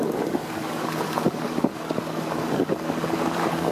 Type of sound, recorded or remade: remade